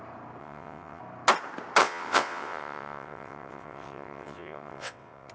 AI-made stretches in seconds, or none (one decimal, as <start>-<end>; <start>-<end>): 0.4-1.0; 1.8-5.3